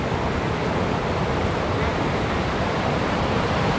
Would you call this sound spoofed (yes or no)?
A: yes